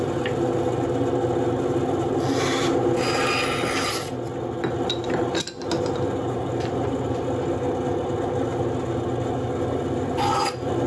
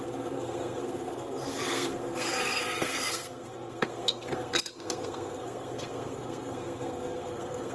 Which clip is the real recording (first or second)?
first